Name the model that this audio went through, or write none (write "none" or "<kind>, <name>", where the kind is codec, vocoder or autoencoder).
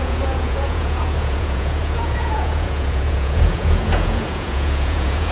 vocoder, Vocos